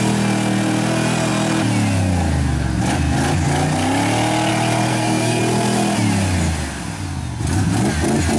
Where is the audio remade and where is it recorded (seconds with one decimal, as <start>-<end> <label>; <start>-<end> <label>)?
0.0-4.9 recorded; 4.9-5.4 remade; 5.4-8.4 recorded